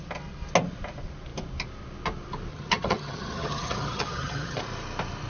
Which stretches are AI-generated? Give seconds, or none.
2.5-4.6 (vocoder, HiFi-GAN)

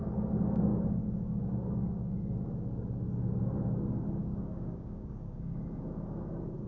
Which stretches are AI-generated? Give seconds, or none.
0.7-2.2 (codec, DAC); 4.2-5.6